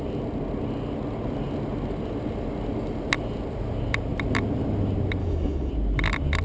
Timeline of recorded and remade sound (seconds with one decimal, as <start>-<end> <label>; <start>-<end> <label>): 0.0-5.2 recorded; 5.2-5.7 remade; 5.7-6.4 recorded